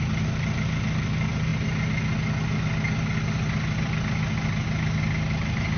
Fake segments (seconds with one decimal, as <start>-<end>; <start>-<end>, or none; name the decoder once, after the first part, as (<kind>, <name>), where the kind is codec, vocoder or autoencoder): none